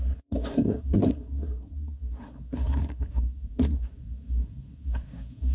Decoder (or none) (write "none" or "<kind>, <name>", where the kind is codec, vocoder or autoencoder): codec, SNAC